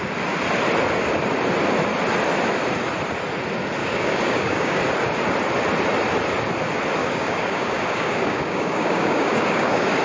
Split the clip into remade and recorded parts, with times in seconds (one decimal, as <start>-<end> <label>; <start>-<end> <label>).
0.0-3.8 recorded; 3.8-4.8 remade; 4.8-7.0 recorded; 7.0-10.0 remade